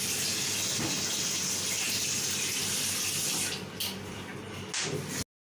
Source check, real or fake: real